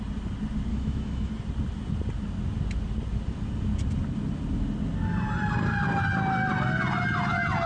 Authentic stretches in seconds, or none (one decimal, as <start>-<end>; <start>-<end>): 0.0-0.7; 1.3-7.7